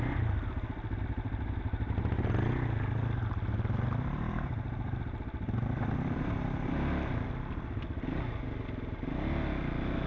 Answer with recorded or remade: recorded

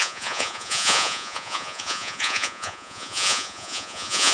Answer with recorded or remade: remade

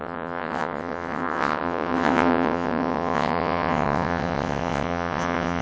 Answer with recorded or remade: remade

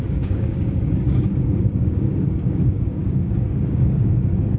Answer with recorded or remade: remade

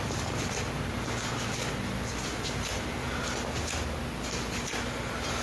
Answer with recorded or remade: recorded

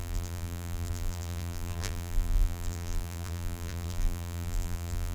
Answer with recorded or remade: remade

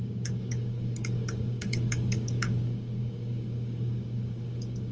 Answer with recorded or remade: remade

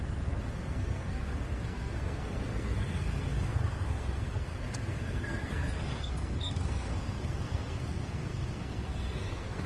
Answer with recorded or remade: remade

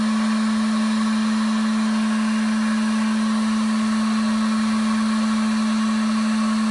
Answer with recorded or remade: recorded